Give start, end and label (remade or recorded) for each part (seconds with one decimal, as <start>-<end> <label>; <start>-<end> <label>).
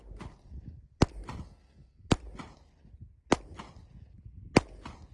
0.0-5.1 recorded